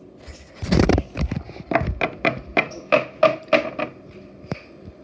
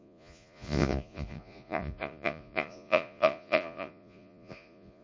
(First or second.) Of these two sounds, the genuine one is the first